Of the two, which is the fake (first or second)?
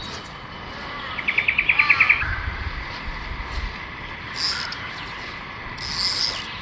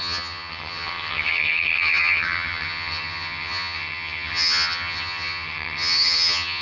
second